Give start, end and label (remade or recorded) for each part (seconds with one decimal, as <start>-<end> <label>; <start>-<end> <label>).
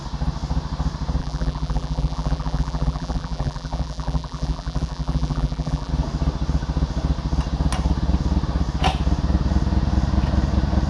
0.0-1.2 recorded; 1.2-5.9 remade; 5.9-10.9 recorded